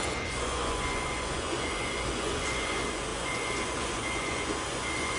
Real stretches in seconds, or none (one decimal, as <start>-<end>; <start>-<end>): none